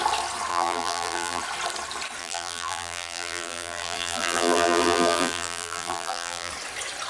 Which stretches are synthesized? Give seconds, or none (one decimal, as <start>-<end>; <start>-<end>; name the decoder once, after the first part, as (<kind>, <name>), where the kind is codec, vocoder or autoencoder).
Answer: 0.5-1.4 (vocoder, BigVGAN v2); 2.2-6.5